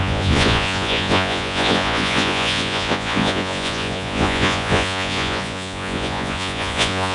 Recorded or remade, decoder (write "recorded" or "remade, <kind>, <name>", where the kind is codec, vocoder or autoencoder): remade, vocoder, Vocos